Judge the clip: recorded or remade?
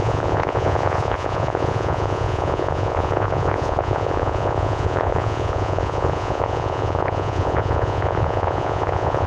remade